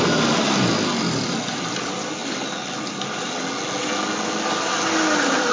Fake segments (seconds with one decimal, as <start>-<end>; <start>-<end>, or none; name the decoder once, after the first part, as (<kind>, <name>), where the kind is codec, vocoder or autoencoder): none